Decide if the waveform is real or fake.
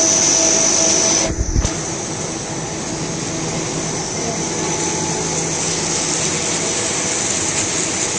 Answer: real